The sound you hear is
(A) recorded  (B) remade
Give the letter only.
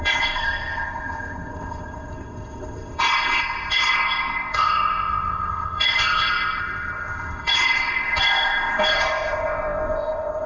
B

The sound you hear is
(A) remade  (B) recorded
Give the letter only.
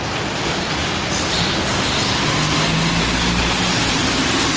B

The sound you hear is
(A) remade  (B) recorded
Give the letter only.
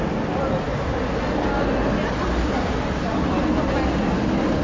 B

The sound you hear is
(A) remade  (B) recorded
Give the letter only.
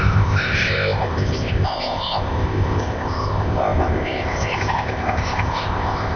A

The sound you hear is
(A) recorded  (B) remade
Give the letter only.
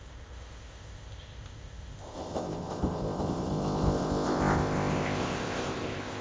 B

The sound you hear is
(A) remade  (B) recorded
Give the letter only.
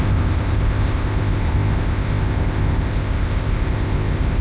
A